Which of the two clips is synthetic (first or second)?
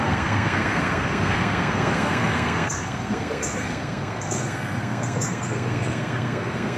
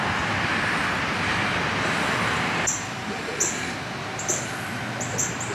first